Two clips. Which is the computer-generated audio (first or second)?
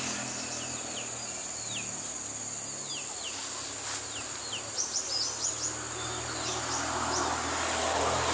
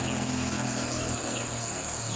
second